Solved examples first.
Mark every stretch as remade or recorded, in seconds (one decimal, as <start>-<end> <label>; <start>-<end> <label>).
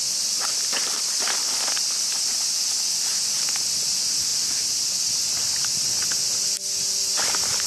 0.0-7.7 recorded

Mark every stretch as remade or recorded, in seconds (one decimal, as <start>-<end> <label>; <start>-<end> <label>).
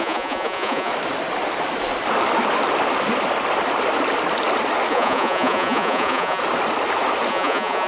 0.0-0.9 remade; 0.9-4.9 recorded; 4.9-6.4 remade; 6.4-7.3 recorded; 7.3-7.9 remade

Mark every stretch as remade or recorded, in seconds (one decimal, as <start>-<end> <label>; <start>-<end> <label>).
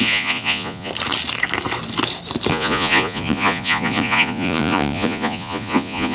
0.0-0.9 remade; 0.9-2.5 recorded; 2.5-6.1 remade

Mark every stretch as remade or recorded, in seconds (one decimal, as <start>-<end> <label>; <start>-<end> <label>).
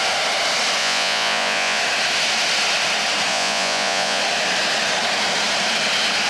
0.0-0.8 recorded; 0.8-1.8 remade; 1.8-3.3 recorded; 3.3-4.2 remade; 4.2-6.3 recorded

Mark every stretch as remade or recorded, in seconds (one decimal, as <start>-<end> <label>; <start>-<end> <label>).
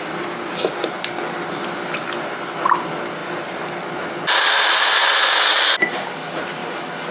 0.0-7.1 recorded